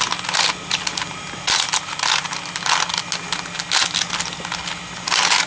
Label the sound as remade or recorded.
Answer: recorded